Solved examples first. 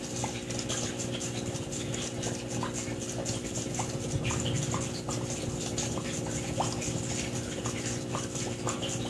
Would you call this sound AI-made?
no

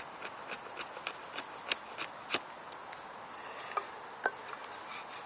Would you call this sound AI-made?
no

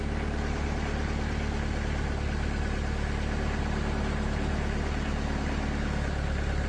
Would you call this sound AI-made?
no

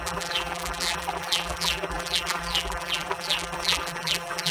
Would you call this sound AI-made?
yes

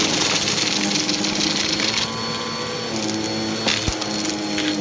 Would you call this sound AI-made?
no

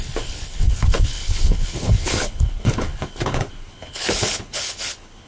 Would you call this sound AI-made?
yes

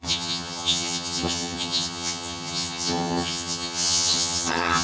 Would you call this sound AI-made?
yes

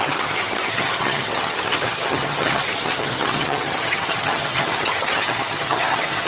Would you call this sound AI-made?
yes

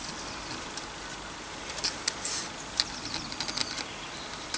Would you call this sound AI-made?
no